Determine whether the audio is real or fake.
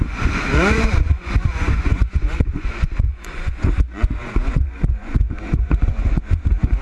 fake